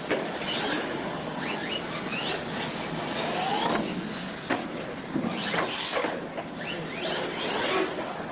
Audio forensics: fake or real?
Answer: real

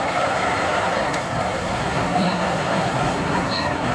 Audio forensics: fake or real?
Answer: fake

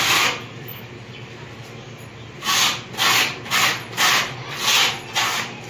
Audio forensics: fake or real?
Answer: real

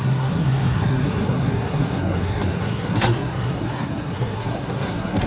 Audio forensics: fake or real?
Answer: fake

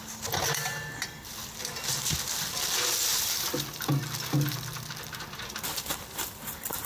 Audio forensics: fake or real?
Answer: real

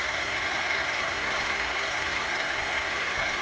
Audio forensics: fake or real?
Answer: fake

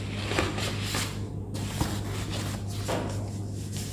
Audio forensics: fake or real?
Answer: real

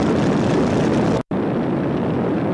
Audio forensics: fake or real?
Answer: real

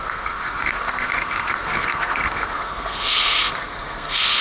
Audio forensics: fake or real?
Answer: fake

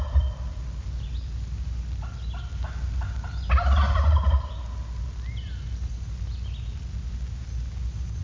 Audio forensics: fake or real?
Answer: real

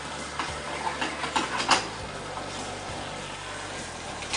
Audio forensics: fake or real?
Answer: real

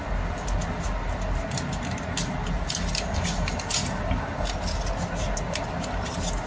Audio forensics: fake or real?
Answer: real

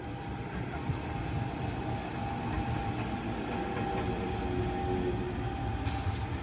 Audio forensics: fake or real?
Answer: real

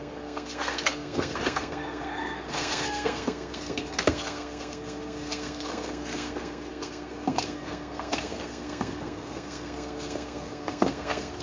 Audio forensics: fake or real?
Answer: fake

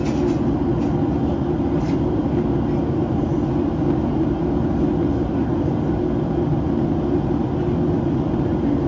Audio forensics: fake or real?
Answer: real